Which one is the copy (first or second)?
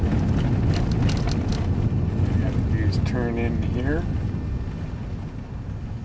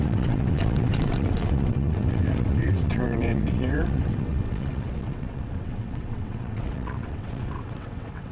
second